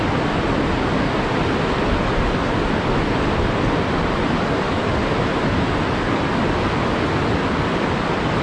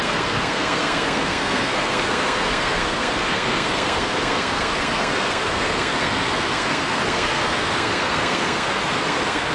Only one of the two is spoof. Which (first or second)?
second